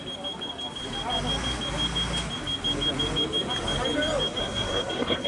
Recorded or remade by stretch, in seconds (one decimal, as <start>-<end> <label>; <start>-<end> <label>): 0.0-4.4 recorded; 4.4-5.3 remade